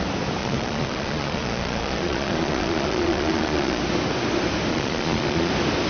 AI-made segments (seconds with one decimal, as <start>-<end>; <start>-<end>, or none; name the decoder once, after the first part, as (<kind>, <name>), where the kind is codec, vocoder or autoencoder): 0.4-3.8 (vocoder, Vocos); 4.7-5.5